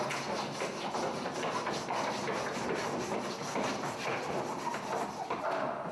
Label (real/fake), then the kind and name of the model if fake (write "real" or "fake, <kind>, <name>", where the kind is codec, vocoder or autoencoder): real